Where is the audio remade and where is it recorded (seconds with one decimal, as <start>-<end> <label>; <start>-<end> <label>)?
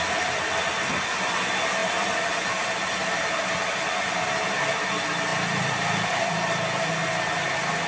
0.0-5.3 recorded; 5.3-6.1 remade; 6.1-7.9 recorded